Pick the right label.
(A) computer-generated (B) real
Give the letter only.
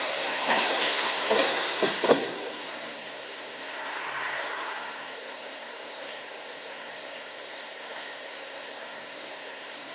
A